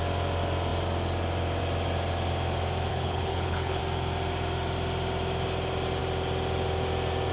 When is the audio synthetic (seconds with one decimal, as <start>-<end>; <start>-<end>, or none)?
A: 2.9-3.8